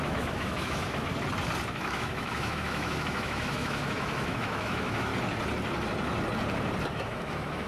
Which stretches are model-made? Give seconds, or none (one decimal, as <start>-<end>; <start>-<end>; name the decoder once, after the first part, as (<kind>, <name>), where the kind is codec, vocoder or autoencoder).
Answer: 0.0-1.1 (autoencoder, DAC-VAE); 1.7-5.1; 6.9-7.7